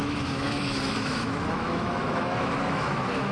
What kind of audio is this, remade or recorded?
remade